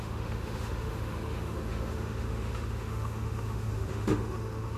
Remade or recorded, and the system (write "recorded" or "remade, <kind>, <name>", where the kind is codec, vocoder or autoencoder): remade, autoencoder, DAC-VAE